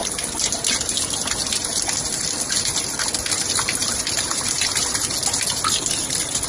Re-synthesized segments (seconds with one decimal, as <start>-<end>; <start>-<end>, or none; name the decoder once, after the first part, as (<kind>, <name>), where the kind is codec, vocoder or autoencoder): none